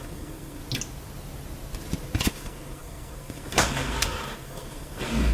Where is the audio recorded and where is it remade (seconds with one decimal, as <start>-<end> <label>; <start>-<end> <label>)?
0.0-0.6 remade; 0.6-2.3 recorded; 2.3-5.3 remade